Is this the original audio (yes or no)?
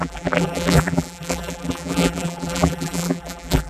no